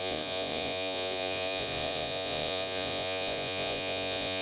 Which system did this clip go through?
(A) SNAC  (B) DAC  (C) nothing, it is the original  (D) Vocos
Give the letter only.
D